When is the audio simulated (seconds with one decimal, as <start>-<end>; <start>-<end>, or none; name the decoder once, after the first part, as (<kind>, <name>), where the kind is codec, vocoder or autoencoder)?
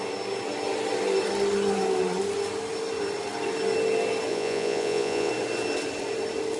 4.3-5.3 (vocoder, Vocos)